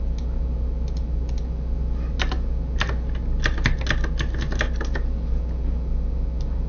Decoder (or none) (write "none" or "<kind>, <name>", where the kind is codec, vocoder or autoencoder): none